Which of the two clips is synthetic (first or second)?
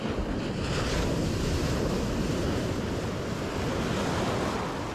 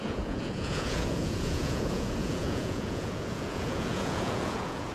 second